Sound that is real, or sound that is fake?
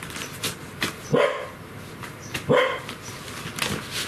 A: real